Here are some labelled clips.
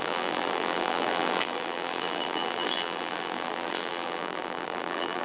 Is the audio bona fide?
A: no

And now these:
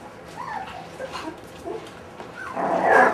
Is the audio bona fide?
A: yes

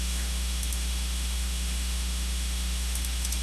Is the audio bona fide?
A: no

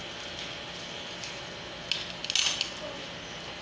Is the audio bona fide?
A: yes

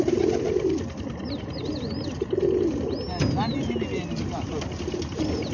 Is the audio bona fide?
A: yes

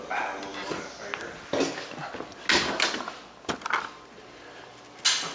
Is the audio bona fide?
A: yes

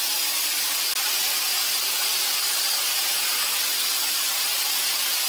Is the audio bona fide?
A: yes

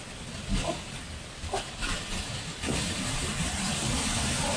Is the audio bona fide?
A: yes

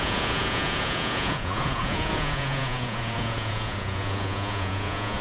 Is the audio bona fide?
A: no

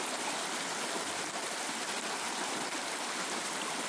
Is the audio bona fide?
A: yes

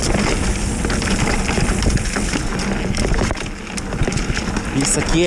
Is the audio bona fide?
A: yes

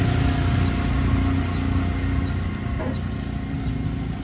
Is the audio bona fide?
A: yes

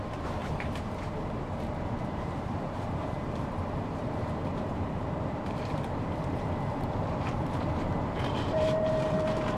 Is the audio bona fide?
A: no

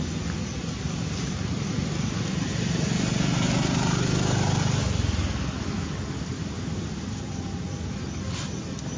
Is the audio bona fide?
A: yes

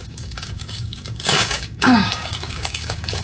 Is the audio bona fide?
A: no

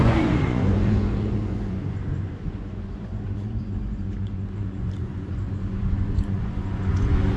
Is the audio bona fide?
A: no